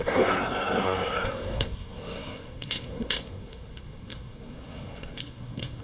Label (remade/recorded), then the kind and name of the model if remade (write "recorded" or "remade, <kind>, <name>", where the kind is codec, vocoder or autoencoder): remade, codec, SNAC